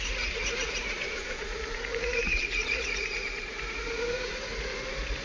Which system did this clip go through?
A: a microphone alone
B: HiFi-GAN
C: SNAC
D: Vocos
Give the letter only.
D